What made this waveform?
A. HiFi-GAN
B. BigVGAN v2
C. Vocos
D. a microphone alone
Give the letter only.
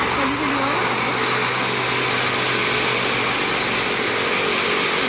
D